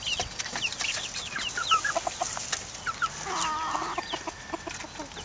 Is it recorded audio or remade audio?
recorded